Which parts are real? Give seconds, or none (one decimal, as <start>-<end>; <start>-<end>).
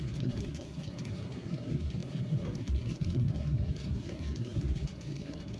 none